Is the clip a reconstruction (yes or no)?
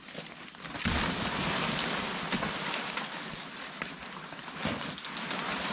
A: no